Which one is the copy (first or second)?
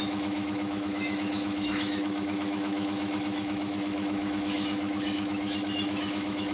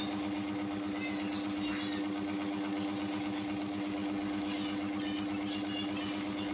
first